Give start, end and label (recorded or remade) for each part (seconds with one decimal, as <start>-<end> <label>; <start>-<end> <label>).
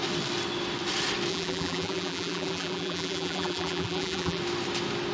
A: 0.0-1.3 recorded; 1.3-4.4 remade; 4.4-5.1 recorded